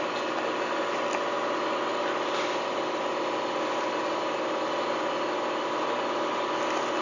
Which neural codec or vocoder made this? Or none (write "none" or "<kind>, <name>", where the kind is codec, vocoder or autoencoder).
none